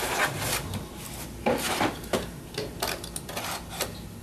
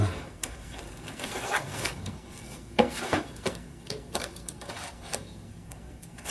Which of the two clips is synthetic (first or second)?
second